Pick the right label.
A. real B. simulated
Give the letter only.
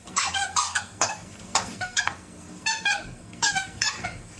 B